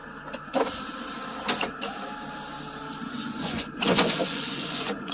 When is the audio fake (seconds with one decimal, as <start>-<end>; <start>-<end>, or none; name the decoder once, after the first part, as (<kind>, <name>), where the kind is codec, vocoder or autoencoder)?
3.1-5.1 (vocoder, Vocos)